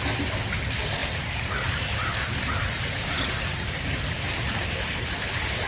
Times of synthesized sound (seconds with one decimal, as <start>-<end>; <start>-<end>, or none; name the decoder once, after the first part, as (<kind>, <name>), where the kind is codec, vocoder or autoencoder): 1.0-4.2 (vocoder, BigVGAN v2)